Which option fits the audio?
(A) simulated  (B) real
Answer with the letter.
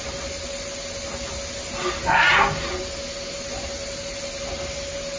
B